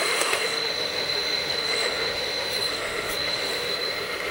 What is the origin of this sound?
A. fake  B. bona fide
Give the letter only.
A